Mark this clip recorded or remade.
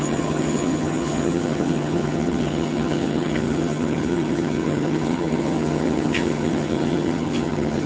remade